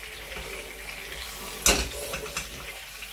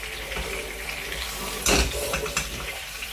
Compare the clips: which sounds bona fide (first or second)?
first